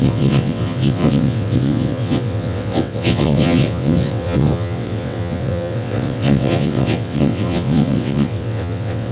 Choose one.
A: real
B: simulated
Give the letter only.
B